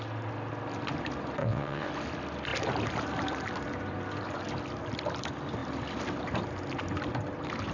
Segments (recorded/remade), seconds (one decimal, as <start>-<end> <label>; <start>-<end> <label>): 0.0-1.4 recorded; 1.4-1.9 remade; 1.9-7.7 recorded